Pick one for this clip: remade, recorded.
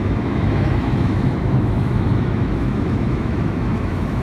remade